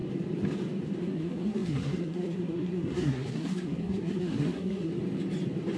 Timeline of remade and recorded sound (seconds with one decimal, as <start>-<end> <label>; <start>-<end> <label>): 0.0-1.0 recorded; 1.0-4.9 remade; 4.9-5.8 recorded